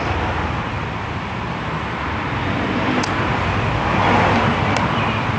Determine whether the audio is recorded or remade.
remade